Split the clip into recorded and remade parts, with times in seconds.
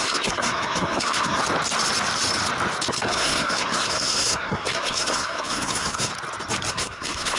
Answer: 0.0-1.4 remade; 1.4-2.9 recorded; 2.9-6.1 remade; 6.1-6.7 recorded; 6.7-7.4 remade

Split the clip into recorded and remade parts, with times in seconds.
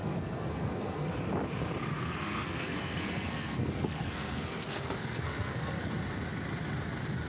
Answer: 0.0-1.1 remade; 1.1-1.9 recorded; 1.9-5.9 remade; 5.9-7.3 recorded